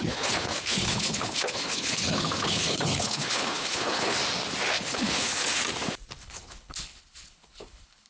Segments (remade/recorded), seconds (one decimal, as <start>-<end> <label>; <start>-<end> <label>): 0.0-4.2 remade; 4.2-4.7 recorded; 4.7-5.6 remade; 5.6-6.2 recorded; 6.2-8.1 remade